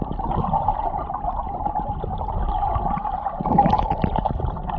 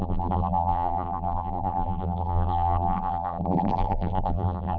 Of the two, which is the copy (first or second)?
second